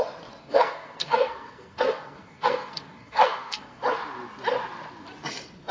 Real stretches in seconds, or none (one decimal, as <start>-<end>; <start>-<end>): 0.0-0.4; 3.8-5.7